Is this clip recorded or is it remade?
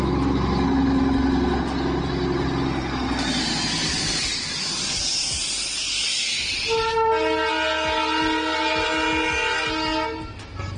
recorded